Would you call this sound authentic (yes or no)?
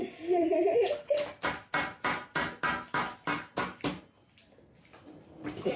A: yes